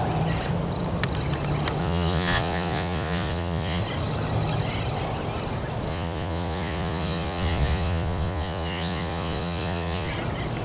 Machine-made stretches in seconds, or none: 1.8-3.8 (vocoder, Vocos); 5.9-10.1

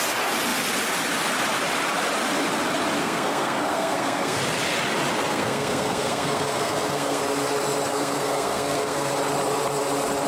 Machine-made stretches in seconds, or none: 3.0-4.4 (codec, SNAC); 5.3-7.2; 7.9-9.1

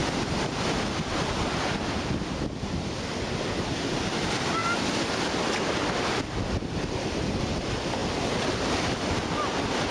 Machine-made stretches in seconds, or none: none

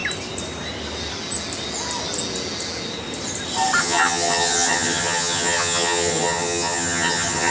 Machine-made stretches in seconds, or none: 3.8-7.5 (vocoder, HiFi-GAN)

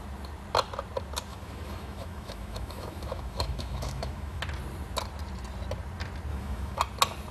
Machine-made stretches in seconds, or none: 1.3-4.4 (autoencoder, DAC-VAE); 6.3-6.8